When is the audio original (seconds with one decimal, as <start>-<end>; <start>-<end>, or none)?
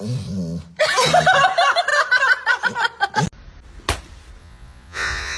0.0-4.4